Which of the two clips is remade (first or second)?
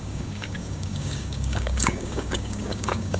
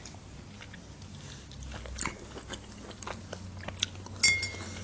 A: first